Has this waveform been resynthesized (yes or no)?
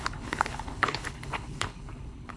yes